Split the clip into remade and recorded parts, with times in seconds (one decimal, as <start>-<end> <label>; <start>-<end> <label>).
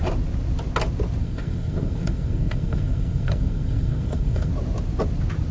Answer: 0.0-1.2 recorded; 1.2-4.5 remade; 4.5-5.5 recorded